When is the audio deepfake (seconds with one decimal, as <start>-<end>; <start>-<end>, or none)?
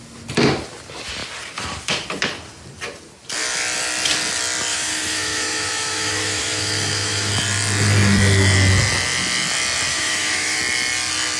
4.7-7.3; 9.9-10.6